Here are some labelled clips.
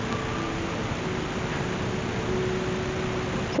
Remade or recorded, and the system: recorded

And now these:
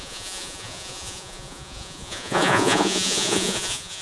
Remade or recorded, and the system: remade, vocoder, Vocos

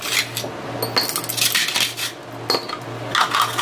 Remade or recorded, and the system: recorded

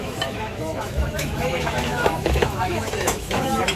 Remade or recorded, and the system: remade, autoencoder, DAC-VAE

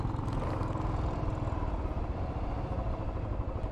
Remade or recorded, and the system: recorded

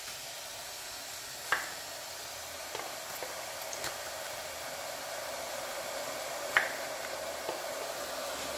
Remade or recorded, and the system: recorded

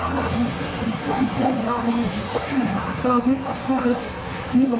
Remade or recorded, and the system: remade, codec, SNAC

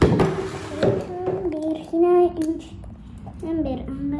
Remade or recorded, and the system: recorded